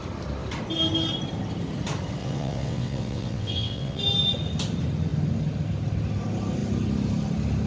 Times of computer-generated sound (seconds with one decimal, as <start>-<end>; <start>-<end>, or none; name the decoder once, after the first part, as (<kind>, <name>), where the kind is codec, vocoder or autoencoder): 2.2-4.0 (vocoder, WaveNeXt)